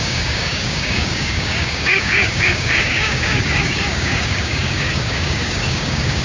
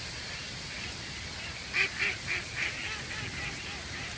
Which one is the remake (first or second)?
first